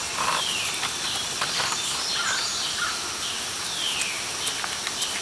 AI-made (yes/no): no